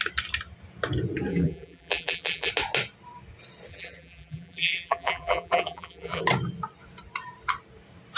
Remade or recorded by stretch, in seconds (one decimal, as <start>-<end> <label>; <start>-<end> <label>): 0.0-1.3 recorded; 1.3-2.5 remade; 2.5-3.7 recorded; 3.7-6.2 remade; 6.2-8.2 recorded